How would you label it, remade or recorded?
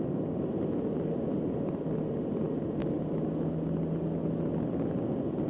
recorded